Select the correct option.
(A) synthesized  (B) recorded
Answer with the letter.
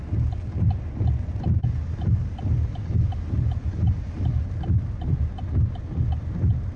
B